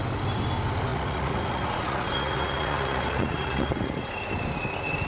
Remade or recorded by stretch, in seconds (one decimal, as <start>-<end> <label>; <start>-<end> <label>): 0.0-0.9 recorded; 0.9-4.0 remade; 4.0-5.1 recorded